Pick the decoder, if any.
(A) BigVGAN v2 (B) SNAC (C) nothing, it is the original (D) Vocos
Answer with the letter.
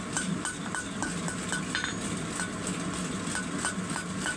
C